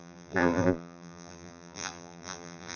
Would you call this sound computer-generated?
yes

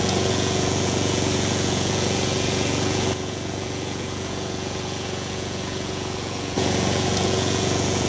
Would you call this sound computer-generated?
yes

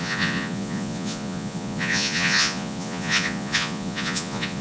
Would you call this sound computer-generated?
yes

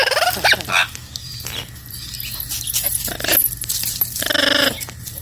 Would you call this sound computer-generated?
no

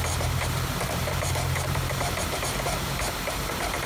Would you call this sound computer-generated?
yes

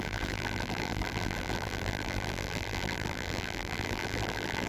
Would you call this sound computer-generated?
yes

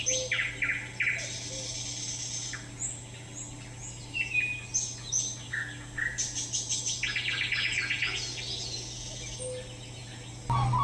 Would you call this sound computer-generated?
no